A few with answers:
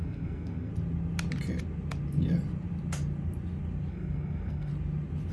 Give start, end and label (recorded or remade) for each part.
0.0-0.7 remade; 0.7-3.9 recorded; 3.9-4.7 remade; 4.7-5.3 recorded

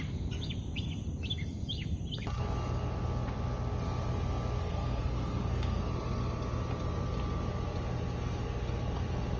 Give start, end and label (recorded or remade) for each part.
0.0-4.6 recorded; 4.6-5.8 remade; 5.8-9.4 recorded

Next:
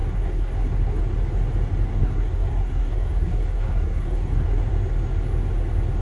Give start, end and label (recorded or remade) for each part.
0.0-1.0 remade; 1.0-2.0 recorded; 2.0-4.7 remade; 4.7-6.0 recorded

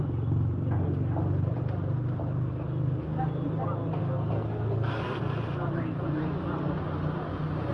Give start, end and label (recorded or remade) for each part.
0.0-4.0 recorded; 4.0-5.2 remade; 5.2-7.7 recorded